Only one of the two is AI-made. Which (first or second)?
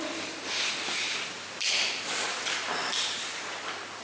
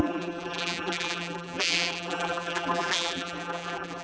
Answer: second